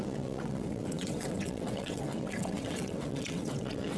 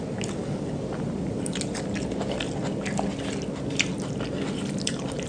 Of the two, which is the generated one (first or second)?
first